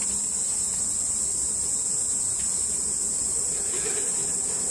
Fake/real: real